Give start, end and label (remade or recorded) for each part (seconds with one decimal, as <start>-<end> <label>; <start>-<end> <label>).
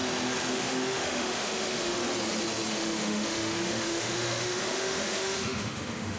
0.0-0.5 recorded; 0.5-2.0 remade; 2.0-2.7 recorded; 2.7-6.2 remade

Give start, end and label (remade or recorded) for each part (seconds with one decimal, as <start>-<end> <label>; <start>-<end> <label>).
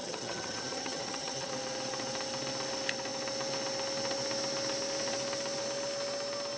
0.0-1.5 remade; 1.5-6.6 recorded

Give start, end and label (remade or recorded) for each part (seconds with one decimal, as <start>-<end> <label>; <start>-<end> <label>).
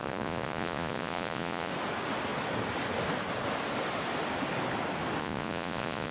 0.0-1.7 remade; 1.7-5.2 recorded; 5.2-6.1 remade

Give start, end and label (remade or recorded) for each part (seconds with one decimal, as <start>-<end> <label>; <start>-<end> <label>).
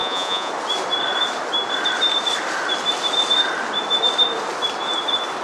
0.0-0.5 remade; 0.5-5.4 recorded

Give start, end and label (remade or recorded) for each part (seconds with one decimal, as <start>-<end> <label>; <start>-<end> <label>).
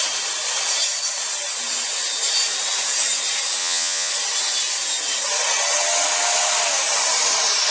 0.0-3.6 recorded; 3.6-4.1 remade; 4.1-7.7 recorded